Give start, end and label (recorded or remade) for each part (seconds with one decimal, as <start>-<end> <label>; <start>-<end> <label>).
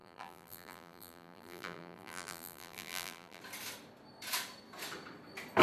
0.0-3.4 remade; 3.4-5.6 recorded